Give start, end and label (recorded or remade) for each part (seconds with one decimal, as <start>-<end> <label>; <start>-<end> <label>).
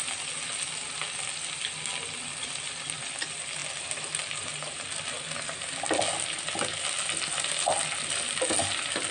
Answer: 0.0-9.1 recorded